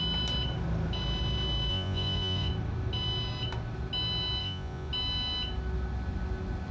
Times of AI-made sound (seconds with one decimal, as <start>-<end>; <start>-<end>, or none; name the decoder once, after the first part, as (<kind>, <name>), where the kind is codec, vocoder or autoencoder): 1.7-2.5 (vocoder, Vocos); 4.4-4.9